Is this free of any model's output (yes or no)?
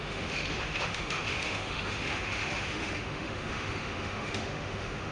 no